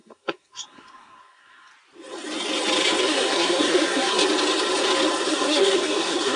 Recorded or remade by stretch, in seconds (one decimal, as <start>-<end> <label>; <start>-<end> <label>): 0.0-1.7 remade; 1.7-3.0 recorded; 3.0-4.2 remade; 4.2-5.3 recorded; 5.3-6.4 remade